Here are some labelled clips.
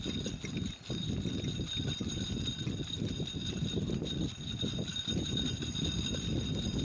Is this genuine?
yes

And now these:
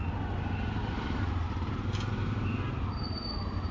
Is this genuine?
yes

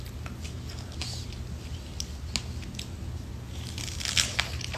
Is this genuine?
yes